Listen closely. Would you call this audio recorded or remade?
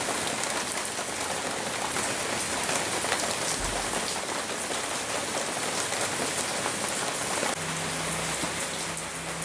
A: recorded